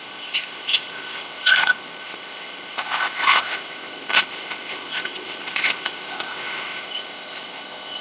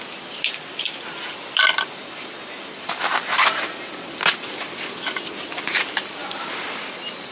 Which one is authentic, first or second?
second